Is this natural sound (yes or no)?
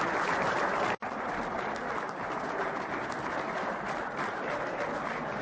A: yes